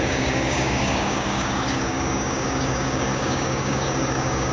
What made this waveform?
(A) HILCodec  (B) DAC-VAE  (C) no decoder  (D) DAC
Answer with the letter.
D